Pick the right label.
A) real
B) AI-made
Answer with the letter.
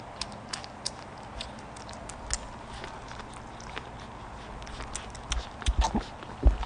A